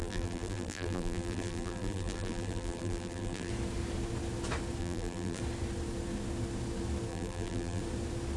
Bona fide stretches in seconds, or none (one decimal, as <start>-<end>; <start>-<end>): 3.5-4.8; 5.4-7.1; 7.8-8.4